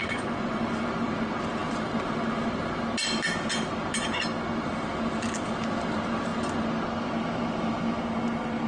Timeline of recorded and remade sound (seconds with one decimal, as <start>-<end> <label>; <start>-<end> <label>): 0.0-0.6 remade; 0.6-8.7 recorded